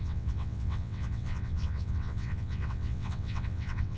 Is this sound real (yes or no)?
no